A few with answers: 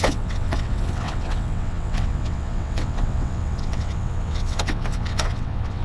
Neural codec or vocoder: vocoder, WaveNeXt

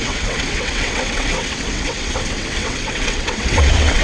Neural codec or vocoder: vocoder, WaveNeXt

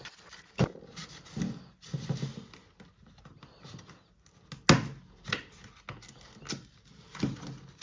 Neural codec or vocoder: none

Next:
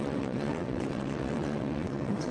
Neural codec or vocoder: vocoder, WaveNeXt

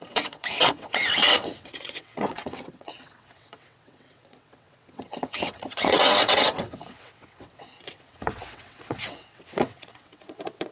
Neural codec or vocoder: vocoder, WaveNeXt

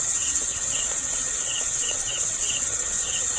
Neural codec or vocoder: vocoder, WaveNeXt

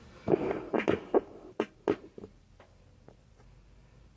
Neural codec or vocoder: none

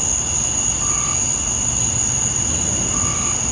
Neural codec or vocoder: none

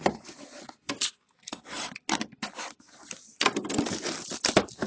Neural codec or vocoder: none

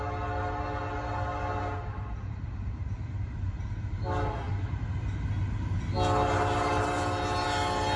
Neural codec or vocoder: none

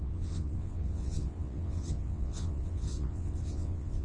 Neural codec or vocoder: vocoder, WaveNeXt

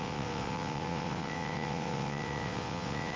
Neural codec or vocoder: vocoder, WaveNeXt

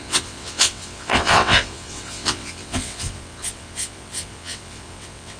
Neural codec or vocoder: vocoder, WaveNeXt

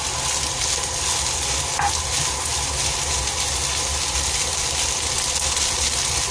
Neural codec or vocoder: none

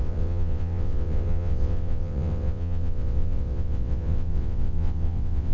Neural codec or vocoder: vocoder, WaveNeXt